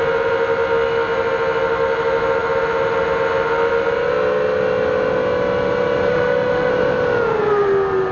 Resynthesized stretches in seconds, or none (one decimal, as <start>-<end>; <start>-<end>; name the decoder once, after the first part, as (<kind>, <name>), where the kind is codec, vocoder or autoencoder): 6.1-6.7 (autoencoder, DAC-VAE)